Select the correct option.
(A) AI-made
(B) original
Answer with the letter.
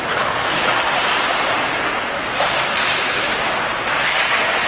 B